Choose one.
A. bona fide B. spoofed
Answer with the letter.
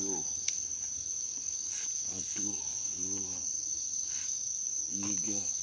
B